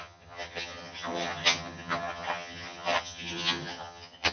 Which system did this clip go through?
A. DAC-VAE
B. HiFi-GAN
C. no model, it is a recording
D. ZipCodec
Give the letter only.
B